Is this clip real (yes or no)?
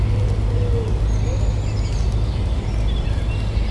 yes